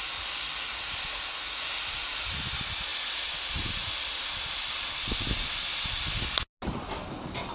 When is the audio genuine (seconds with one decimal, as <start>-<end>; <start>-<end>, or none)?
0.0-7.5